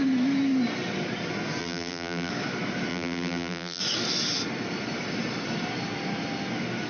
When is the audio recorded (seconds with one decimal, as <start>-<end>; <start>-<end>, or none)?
0.0-1.6; 2.3-2.9; 3.8-6.9